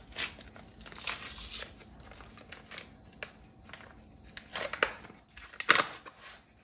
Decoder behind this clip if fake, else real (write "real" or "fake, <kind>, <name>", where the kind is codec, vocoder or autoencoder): real